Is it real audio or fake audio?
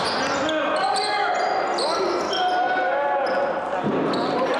real